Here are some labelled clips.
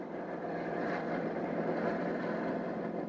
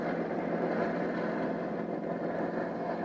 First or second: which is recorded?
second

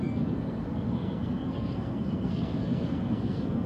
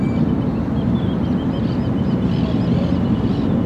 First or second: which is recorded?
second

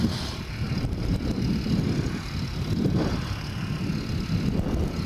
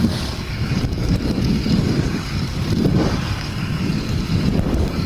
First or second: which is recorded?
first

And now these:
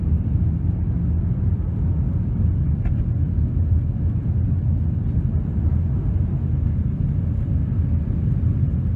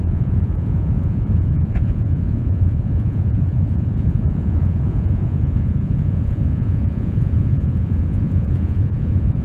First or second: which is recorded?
first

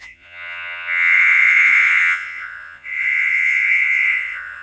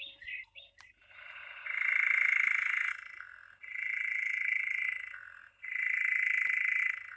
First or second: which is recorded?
second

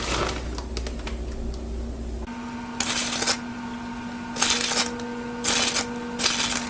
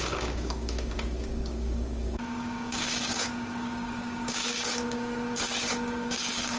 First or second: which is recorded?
first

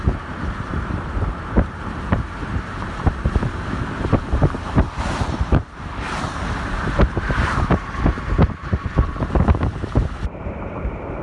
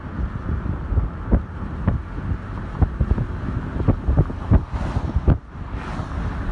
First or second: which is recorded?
second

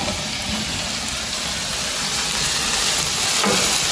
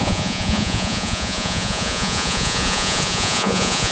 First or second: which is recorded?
first